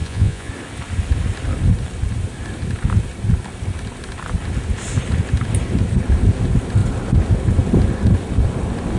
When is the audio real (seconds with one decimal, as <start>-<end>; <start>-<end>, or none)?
0.5-9.0